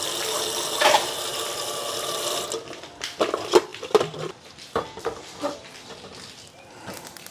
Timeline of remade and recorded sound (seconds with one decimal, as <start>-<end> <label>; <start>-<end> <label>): 0.0-3.7 recorded; 3.7-6.4 remade; 6.4-7.3 recorded